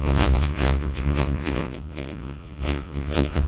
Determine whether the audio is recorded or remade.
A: remade